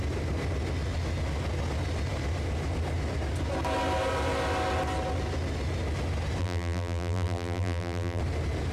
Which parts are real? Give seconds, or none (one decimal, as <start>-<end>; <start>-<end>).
0.0-6.4; 8.2-8.7